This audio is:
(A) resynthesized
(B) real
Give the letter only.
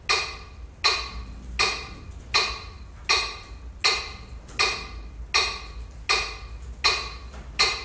B